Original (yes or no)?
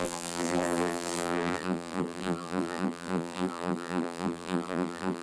no